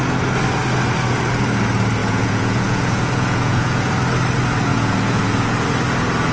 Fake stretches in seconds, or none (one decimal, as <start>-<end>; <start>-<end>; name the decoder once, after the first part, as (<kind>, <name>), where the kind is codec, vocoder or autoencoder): 2.0-3.9 (vocoder, Vocos); 4.7-5.5